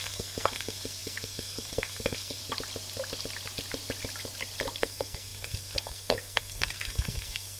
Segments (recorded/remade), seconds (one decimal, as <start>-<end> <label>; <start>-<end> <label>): 0.0-2.4 remade; 2.4-4.8 recorded; 4.8-7.6 remade